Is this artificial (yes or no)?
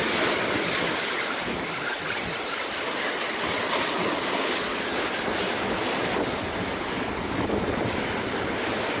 no